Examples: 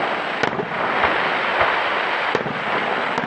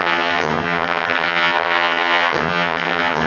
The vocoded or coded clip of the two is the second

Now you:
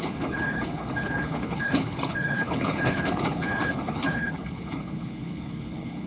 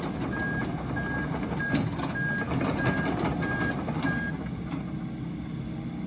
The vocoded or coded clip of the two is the first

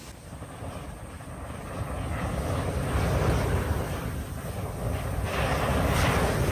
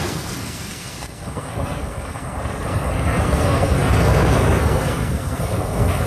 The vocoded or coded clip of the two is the second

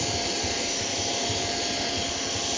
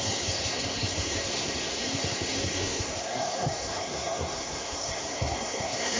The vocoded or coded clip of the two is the second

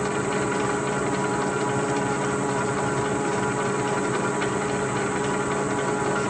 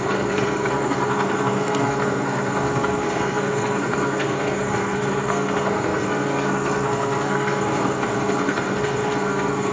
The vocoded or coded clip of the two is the second